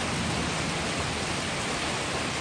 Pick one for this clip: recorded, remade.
recorded